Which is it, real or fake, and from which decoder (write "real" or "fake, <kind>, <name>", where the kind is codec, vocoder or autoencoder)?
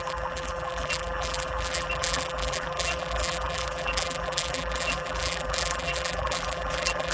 fake, vocoder, BigVGAN v2